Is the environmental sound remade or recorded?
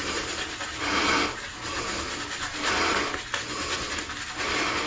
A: recorded